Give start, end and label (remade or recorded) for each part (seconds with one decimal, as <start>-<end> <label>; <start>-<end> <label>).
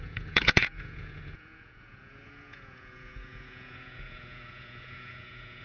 0.0-5.6 remade